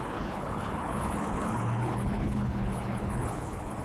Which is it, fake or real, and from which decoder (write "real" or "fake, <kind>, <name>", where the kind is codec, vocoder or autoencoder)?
fake, codec, HILCodec